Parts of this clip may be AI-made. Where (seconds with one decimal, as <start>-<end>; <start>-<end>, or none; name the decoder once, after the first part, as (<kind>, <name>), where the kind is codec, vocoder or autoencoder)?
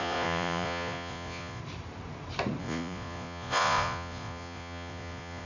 0.0-1.6 (vocoder, Vocos); 2.6-5.5